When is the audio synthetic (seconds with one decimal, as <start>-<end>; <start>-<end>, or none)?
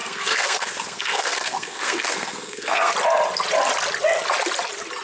0.0-2.9